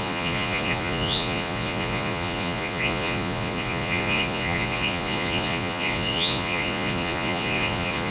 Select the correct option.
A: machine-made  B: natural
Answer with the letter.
A